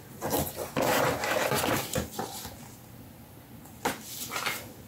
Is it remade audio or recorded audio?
recorded